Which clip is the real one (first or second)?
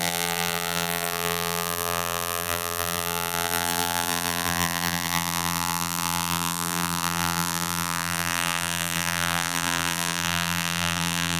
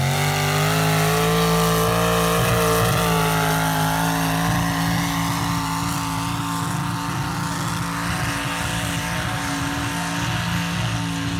second